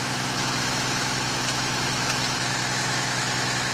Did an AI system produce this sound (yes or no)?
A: yes